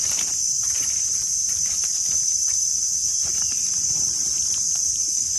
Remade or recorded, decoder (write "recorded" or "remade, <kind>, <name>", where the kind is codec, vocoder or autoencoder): remade, vocoder, BigVGAN v2